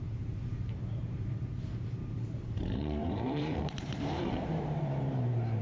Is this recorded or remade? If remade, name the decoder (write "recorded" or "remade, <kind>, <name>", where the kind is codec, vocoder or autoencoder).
remade, vocoder, BigVGAN v2